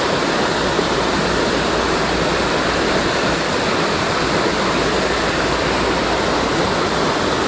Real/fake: real